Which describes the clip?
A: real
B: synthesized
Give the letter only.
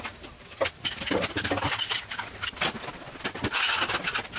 A